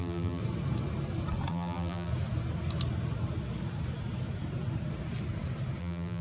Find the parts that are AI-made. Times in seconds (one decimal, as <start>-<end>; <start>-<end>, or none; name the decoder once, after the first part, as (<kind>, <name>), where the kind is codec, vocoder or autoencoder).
0.0-0.4 (vocoder, BigVGAN v2); 1.5-2.1; 5.8-6.2